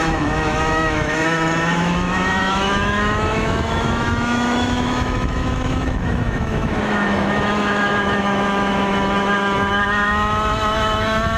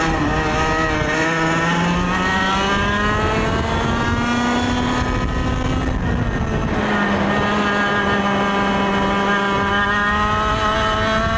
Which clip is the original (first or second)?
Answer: second